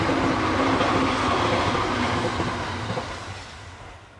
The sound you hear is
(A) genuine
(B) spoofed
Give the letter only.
A